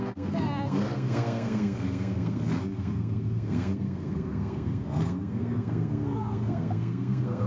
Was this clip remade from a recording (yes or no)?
yes